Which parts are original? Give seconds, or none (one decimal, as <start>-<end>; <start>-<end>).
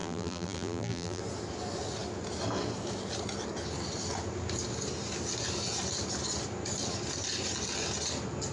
1.2-8.5